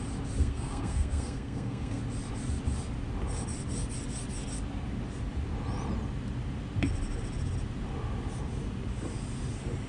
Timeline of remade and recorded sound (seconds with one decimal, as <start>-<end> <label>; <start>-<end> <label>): 0.0-0.4 recorded; 0.4-2.0 remade; 2.0-9.9 recorded